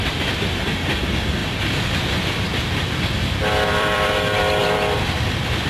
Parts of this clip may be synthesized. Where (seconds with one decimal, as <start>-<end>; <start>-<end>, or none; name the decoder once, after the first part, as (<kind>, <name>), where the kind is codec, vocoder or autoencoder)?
0.0-2.5 (vocoder, BigVGAN v2); 3.7-5.7

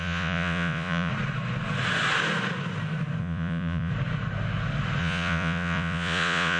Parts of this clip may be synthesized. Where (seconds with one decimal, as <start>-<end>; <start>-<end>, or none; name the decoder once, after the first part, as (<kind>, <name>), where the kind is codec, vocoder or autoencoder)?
0.0-1.1 (vocoder, Vocos); 3.2-3.9; 5.0-6.6